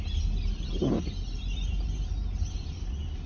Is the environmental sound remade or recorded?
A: recorded